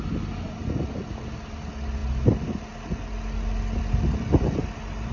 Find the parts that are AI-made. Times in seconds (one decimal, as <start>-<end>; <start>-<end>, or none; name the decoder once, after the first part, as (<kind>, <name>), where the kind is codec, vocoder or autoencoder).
none